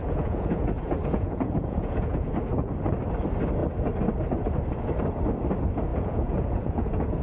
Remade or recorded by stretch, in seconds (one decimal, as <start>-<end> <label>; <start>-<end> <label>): 0.0-2.3 remade; 2.3-5.9 recorded; 5.9-7.2 remade